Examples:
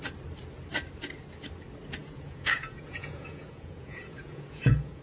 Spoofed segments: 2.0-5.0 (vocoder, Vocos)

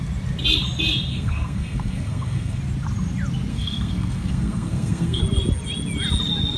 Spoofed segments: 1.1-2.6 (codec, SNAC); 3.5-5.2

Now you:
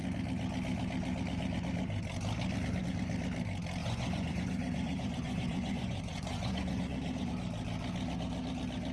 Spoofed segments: 3.8-7.3 (vocoder, Vocos)

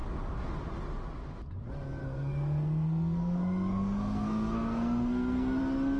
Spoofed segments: 2.0-5.6 (codec, SNAC)

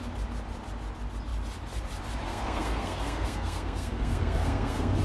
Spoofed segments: 2.3-5.0 (codec, SNAC)

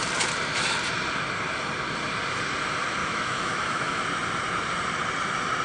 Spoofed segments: 3.0-4.0 (autoencoder, DAC-VAE)

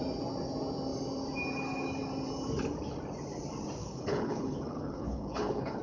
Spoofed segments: 3.8-5.8 (codec, HILCodec)